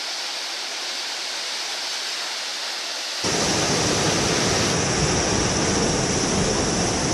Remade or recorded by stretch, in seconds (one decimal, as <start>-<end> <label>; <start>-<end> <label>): 0.0-0.7 recorded; 0.7-1.7 remade; 1.7-7.1 recorded